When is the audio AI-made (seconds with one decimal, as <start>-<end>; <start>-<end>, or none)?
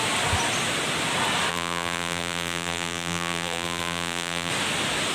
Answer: 1.5-4.5